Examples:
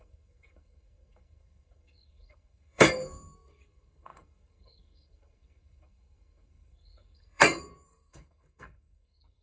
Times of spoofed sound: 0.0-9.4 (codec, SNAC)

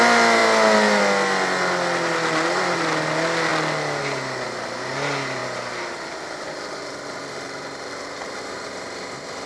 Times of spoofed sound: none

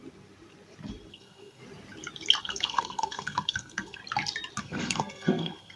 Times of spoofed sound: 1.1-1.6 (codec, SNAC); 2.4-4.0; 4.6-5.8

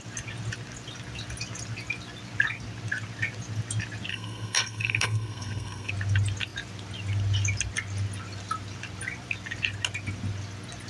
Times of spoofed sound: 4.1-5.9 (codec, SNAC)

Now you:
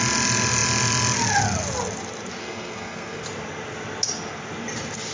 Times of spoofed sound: 2.4-3.2 (codec, SNAC)